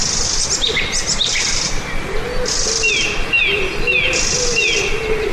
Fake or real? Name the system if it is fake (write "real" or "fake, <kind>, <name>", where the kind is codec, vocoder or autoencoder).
real